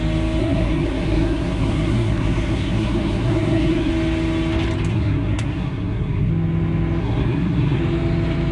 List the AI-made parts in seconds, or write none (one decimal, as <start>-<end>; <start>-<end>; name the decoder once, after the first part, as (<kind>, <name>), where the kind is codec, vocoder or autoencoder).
0.4-3.9 (codec, SNAC); 4.9-6.3; 7.0-7.8